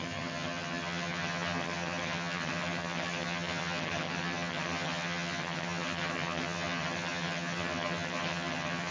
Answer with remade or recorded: remade